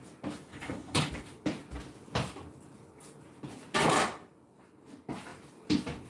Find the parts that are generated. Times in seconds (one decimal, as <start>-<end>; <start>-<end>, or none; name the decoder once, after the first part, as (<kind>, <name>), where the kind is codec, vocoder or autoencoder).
0.5-1.1 (codec, HILCodec)